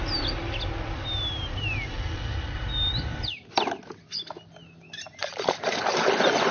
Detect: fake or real real